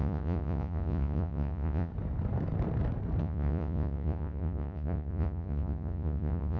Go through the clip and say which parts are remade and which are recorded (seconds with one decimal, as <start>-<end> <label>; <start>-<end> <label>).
0.0-1.9 remade; 1.9-3.2 recorded; 3.2-6.6 remade